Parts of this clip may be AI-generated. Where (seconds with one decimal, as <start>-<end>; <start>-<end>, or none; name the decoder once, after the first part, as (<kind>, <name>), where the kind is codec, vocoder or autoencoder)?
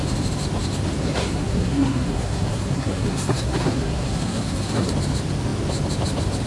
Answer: 1.0-4.9 (codec, SNAC)